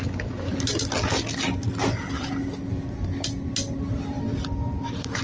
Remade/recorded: recorded